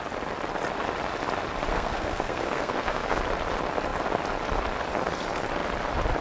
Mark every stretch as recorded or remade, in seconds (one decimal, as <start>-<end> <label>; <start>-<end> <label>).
0.0-1.7 recorded; 1.7-3.2 remade; 3.2-6.2 recorded